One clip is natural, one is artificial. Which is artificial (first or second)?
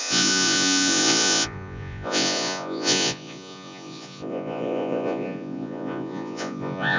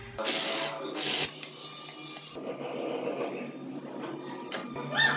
first